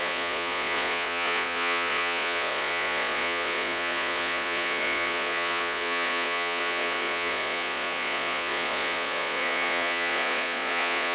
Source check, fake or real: fake